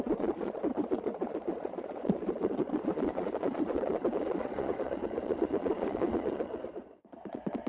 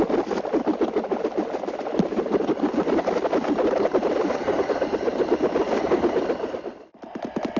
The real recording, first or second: second